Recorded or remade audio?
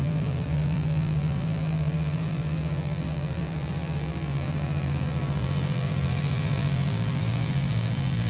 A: remade